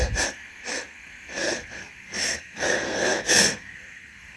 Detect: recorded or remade remade